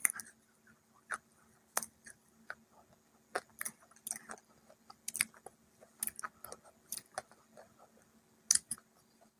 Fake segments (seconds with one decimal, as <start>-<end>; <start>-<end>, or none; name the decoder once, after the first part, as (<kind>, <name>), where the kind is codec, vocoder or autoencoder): 1.3-2.5 (vocoder, BigVGAN v2); 8.6-9.4